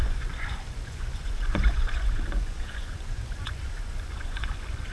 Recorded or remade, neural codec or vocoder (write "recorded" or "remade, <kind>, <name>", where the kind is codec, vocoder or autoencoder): remade, vocoder, Vocos